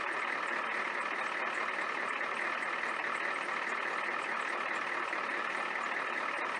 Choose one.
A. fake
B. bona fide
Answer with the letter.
B